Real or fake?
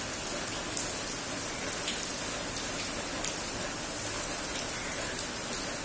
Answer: real